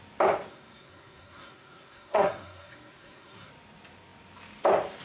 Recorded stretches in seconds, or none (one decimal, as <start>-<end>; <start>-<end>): 0.0-0.5; 3.5-5.0